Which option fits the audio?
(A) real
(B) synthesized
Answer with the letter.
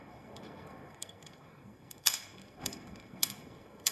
B